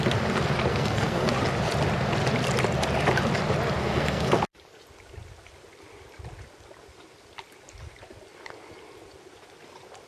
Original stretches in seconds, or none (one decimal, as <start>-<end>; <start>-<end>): 0.0-0.7; 1.3-3.8; 4.4-10.1